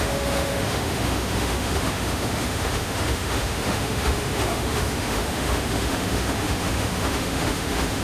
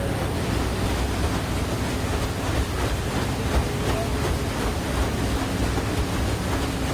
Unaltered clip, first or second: second